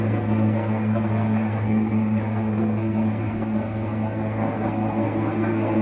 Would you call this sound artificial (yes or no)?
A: yes